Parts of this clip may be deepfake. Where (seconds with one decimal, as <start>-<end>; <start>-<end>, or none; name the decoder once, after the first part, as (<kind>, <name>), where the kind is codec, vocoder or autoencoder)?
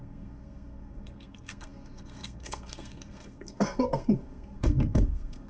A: 0.0-5.5 (codec, SNAC)